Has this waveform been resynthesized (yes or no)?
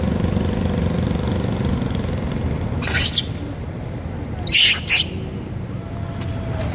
no